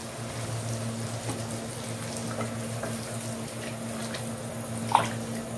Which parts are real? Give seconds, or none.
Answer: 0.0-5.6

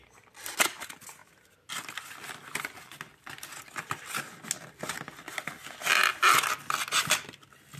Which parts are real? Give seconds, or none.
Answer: 0.0-7.8